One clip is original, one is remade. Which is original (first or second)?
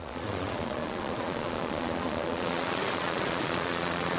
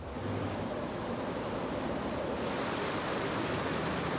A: second